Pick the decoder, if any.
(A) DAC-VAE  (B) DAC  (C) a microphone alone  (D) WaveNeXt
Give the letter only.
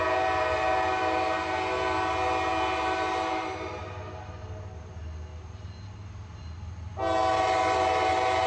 C